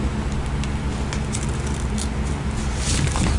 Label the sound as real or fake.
real